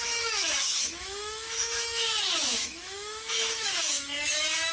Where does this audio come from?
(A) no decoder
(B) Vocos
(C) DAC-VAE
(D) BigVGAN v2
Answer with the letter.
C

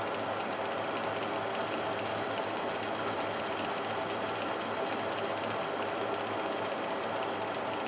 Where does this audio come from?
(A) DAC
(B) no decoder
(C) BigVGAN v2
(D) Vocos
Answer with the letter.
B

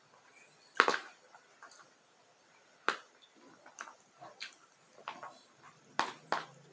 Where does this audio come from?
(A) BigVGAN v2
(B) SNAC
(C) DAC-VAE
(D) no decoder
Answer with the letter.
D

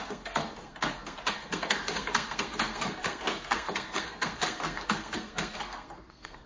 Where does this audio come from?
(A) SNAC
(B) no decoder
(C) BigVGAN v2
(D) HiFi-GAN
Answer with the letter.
A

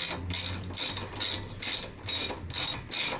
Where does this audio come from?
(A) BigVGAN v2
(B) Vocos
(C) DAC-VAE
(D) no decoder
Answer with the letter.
D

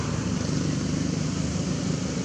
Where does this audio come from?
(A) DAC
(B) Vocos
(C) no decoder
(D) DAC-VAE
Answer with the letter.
C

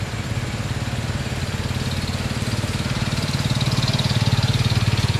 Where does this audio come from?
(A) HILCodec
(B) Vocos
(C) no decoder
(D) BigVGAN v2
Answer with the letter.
C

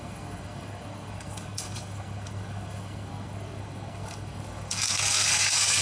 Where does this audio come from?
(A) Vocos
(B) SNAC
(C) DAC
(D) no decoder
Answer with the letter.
B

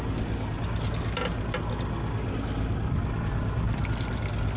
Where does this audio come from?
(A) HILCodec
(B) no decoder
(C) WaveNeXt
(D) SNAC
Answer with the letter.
B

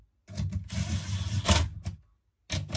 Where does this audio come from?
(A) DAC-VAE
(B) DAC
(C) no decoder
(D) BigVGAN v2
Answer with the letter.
C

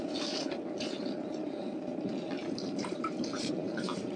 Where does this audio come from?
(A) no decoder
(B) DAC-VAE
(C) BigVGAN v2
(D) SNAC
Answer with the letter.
C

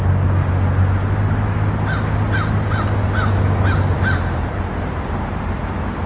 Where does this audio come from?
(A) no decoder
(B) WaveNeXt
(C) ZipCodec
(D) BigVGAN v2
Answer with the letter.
A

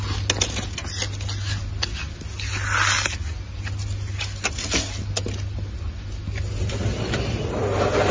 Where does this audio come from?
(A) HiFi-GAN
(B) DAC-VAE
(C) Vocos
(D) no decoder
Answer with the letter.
D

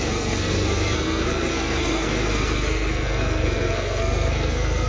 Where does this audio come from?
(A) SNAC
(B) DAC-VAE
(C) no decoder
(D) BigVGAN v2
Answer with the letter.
A